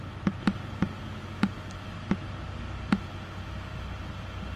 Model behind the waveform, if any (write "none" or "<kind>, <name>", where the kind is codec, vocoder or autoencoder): none